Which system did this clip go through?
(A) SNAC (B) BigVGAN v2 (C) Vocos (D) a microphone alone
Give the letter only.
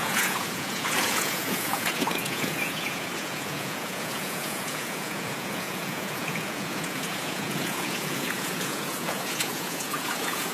C